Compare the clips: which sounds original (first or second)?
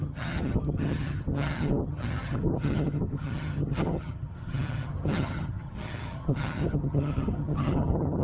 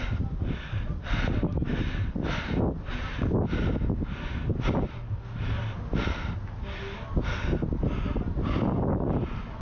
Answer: second